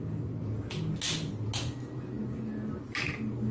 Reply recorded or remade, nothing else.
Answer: recorded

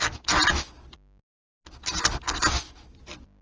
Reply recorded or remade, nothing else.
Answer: recorded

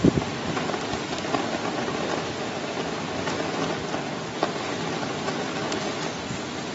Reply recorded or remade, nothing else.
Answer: recorded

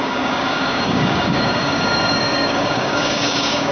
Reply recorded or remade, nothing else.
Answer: remade